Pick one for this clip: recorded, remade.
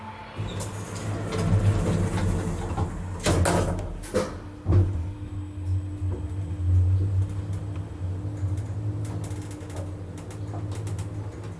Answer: recorded